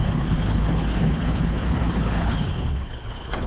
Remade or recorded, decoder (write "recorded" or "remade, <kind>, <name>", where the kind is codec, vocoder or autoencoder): remade, codec, HILCodec